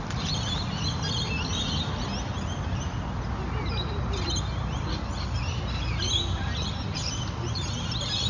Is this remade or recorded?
recorded